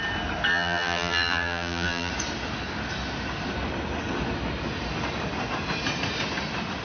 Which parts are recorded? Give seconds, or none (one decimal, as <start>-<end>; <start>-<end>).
0.0-0.5; 2.1-6.8